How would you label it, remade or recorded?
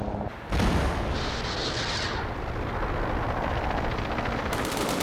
recorded